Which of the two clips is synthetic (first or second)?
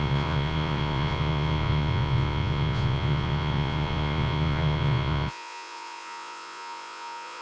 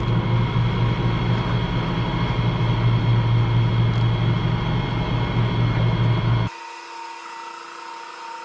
first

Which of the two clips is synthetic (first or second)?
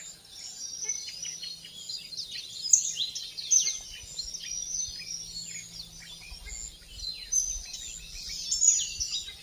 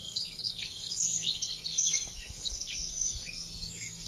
second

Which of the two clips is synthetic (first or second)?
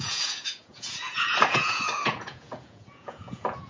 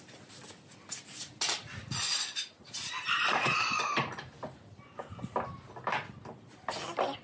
first